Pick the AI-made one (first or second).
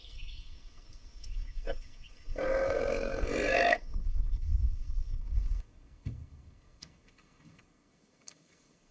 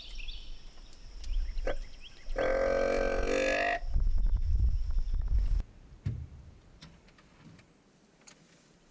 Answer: first